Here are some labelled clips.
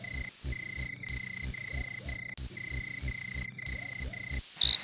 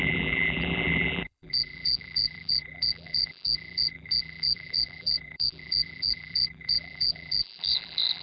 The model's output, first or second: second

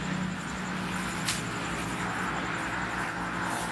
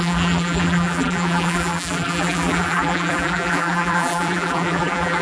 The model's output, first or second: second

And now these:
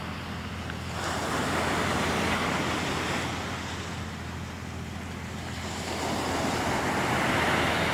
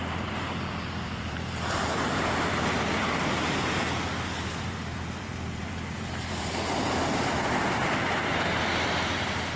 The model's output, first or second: second